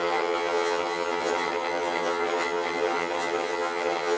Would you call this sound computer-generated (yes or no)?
yes